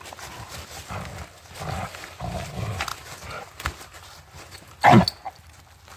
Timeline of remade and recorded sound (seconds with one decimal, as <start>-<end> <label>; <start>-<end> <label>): 0.0-6.0 recorded